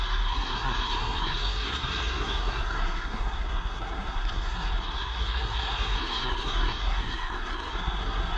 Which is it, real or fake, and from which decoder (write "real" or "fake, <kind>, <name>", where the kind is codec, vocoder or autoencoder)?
fake, codec, SNAC